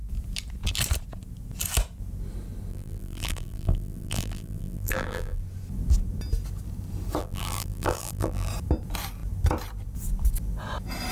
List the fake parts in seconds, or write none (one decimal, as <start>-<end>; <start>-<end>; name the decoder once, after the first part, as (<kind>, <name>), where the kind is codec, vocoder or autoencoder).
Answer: 2.7-5.4 (vocoder, BigVGAN v2); 7.2-8.5

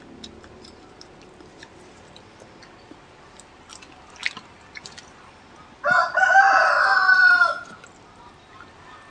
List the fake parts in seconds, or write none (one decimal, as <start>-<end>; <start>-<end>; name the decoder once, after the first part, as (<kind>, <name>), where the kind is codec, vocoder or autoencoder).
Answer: 4.2-5.5 (vocoder, BigVGAN v2); 7.2-8.7

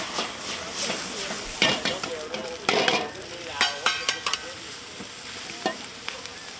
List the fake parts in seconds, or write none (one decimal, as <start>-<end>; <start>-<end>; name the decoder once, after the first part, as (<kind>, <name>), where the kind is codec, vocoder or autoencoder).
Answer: 2.4-6.6 (vocoder, BigVGAN v2)

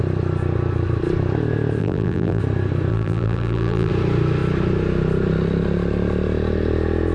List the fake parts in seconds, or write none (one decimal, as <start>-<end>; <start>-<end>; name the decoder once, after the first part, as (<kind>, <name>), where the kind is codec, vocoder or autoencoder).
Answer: 1.8-2.4 (vocoder, BigVGAN v2); 2.9-3.9

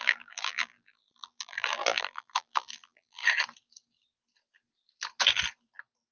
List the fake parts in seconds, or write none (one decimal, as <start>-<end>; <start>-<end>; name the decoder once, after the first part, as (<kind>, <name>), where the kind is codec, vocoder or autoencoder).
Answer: 0.0-3.2 (vocoder, BigVGAN v2)

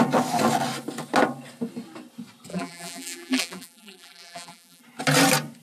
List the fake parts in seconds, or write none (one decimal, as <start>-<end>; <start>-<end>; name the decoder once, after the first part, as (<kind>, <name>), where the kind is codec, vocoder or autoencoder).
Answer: 2.5-4.8 (vocoder, BigVGAN v2)